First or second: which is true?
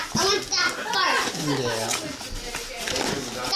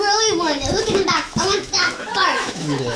first